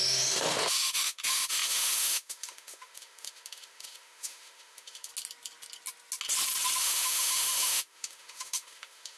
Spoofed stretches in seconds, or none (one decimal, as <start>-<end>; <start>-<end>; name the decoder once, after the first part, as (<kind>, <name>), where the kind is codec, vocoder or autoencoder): 0.0-5.1 (autoencoder, DAC-VAE); 6.8-9.2